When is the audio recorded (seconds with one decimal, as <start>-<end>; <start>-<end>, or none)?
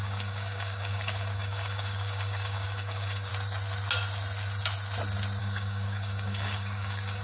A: 3.3-5.4